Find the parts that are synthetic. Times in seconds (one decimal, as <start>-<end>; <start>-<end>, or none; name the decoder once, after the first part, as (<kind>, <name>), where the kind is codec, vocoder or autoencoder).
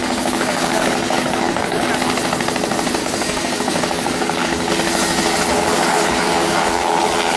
0.0-1.9 (codec, DAC); 3.0-4.7; 5.5-7.0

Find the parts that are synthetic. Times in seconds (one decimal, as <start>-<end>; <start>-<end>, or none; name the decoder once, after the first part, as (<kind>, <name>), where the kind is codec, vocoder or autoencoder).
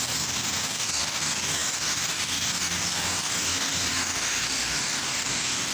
0.0-5.7 (codec, DAC)